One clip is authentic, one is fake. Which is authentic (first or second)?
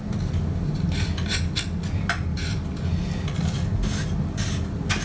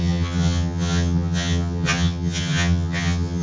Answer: first